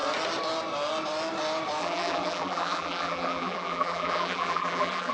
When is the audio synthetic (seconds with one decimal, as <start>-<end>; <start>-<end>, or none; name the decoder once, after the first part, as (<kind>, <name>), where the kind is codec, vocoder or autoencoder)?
1.8-5.1 (vocoder, BigVGAN v2)